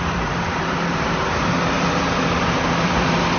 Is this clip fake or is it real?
real